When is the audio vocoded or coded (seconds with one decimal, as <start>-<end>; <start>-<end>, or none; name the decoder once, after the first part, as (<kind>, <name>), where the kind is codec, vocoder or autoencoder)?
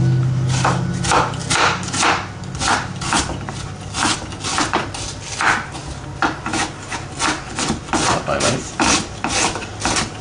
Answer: none